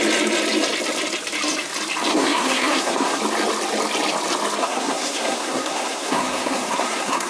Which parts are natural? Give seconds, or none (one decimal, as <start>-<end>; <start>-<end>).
0.0-2.1; 3.2-4.6